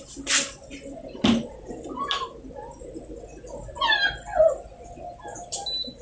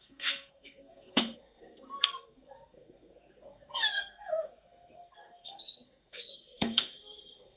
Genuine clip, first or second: first